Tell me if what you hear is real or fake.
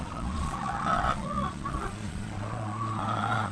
fake